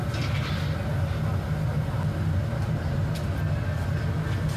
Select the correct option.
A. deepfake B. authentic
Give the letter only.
B